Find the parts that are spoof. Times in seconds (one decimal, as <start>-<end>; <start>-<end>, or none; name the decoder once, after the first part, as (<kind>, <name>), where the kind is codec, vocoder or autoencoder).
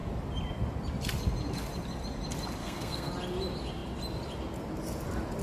2.6-3.1 (codec, SNAC)